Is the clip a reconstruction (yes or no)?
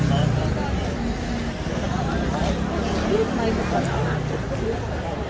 no